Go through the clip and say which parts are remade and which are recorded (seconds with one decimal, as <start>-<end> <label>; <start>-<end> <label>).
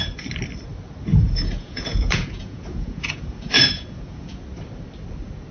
0.0-1.1 recorded; 1.1-4.4 remade; 4.4-5.5 recorded